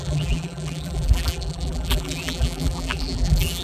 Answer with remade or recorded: remade